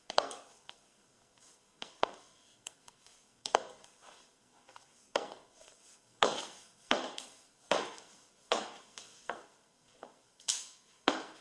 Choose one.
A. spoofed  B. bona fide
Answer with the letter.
A